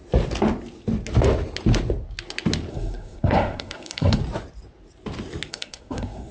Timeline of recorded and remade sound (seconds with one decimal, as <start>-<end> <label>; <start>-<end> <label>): 0.0-2.7 recorded; 2.7-4.2 remade; 4.2-5.5 recorded; 5.5-6.3 remade